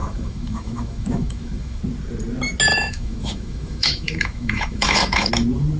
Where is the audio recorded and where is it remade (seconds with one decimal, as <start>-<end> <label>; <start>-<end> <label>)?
0.0-1.8 remade; 1.8-2.7 recorded; 2.7-5.3 remade; 5.3-5.8 recorded